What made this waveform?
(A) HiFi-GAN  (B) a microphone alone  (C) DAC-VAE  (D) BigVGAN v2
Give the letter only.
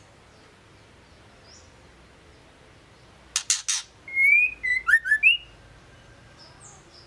B